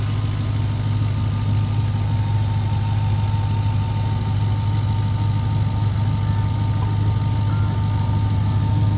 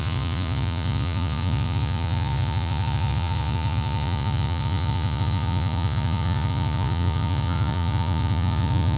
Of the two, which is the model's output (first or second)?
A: second